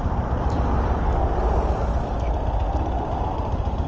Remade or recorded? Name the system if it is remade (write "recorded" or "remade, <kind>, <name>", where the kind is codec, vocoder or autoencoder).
recorded